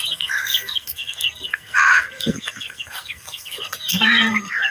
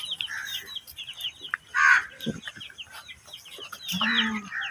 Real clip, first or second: second